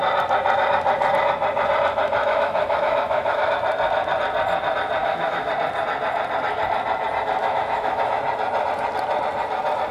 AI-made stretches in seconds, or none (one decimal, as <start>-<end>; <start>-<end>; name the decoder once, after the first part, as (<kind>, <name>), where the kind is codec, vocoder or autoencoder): 2.2-3.5 (autoencoder, DAC-VAE); 5.0-5.5; 7.4-8.2